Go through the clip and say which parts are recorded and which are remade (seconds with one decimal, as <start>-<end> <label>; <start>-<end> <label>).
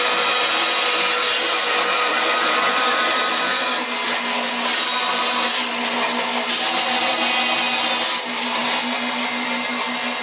0.0-1.4 recorded; 1.4-3.7 remade; 3.7-10.2 recorded